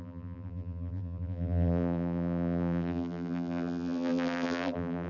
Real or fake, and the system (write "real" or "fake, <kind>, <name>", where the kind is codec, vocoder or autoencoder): fake, vocoder, BigVGAN v2